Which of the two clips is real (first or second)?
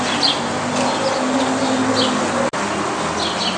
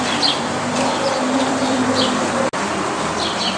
first